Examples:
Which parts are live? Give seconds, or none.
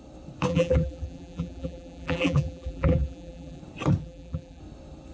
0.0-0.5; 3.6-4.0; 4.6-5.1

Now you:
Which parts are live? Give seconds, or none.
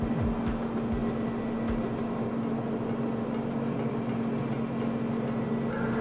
0.0-6.0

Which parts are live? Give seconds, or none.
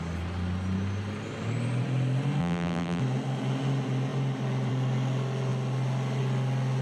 0.0-2.4; 3.0-6.8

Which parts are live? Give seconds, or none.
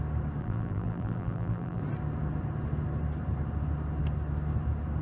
0.0-0.4; 1.8-5.0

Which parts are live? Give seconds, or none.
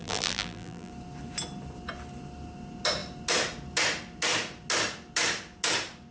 0.9-6.1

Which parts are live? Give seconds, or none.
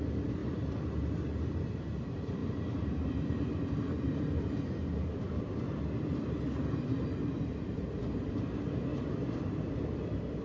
0.0-0.4; 1.0-2.4; 5.6-7.7; 8.3-8.9; 9.7-10.4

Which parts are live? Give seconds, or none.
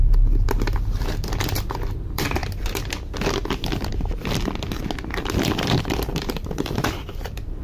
2.4-5.8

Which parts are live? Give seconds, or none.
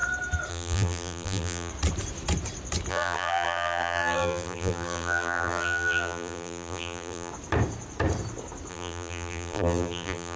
0.0-0.5; 1.7-2.9; 7.3-8.7